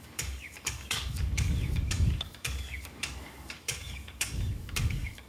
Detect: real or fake fake